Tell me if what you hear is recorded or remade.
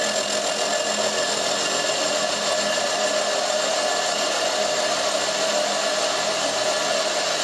recorded